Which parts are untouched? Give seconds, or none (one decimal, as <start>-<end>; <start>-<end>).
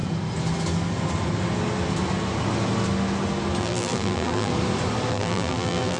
0.0-3.6; 4.5-5.1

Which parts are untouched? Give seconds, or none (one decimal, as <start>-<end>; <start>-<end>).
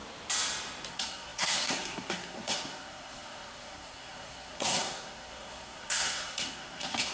0.0-0.9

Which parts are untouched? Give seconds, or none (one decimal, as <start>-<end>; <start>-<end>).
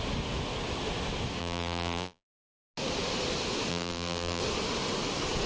0.0-1.4; 2.3-3.7; 4.4-5.5